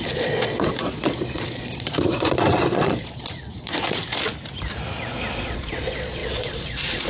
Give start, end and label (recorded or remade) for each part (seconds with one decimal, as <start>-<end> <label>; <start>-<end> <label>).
0.0-4.0 remade; 4.0-5.3 recorded; 5.3-7.1 remade